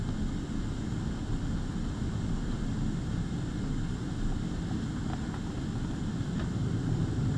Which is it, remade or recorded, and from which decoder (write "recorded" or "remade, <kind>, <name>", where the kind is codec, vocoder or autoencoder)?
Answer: recorded